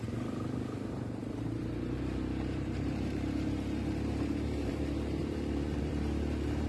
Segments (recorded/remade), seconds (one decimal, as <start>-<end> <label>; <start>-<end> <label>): 0.0-6.7 remade